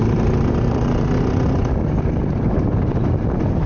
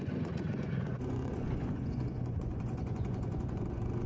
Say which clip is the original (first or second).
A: first